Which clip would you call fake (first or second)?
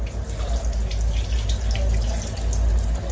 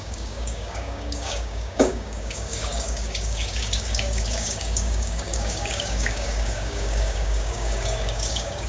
second